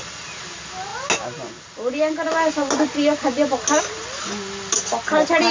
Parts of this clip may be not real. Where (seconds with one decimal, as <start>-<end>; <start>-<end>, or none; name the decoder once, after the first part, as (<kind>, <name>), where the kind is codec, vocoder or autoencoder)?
none